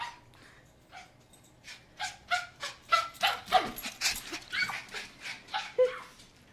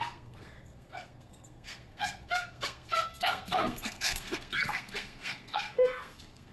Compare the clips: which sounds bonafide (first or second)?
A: first